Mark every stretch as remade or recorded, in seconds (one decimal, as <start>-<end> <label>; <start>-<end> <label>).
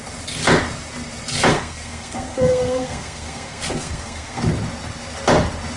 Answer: 0.0-1.5 recorded; 1.5-4.4 remade; 4.4-5.8 recorded